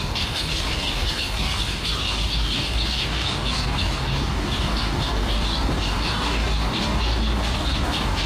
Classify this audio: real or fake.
fake